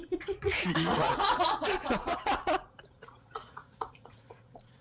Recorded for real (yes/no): no